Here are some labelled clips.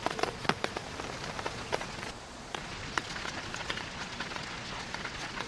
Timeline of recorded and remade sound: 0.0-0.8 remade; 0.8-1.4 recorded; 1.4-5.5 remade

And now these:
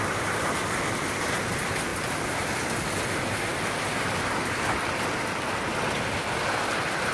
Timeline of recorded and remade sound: 0.0-7.1 recorded

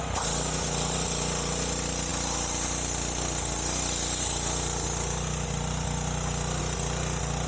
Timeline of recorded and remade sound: 0.0-7.5 recorded